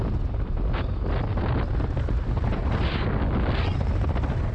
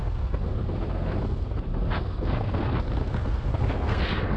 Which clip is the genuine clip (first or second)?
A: first